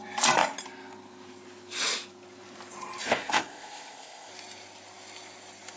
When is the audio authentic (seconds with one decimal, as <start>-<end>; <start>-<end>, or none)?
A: 0.0-3.1; 4.3-5.8